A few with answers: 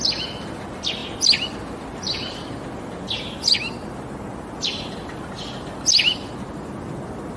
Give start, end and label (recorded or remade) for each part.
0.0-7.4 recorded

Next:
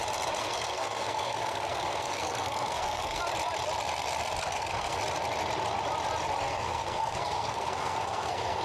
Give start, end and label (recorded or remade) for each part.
0.0-0.4 recorded; 0.4-3.2 remade; 3.2-4.4 recorded; 4.4-5.0 remade; 5.0-6.5 recorded; 6.5-8.6 remade

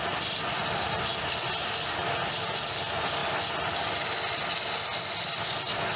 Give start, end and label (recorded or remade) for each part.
0.0-6.0 recorded